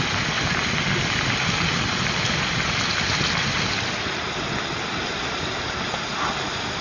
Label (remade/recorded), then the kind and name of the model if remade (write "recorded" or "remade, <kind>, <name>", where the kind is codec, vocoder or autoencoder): recorded